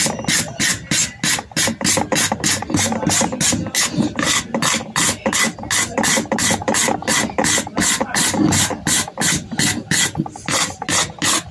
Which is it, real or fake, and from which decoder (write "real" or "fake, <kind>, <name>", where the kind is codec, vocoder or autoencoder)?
real